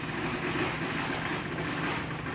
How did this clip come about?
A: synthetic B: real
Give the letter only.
B